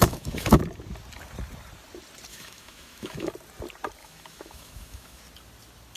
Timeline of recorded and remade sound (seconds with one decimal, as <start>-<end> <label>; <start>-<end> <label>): 0.0-0.6 remade; 0.6-2.3 recorded; 2.3-3.3 remade; 3.3-4.0 recorded; 4.0-5.2 remade; 5.2-6.0 recorded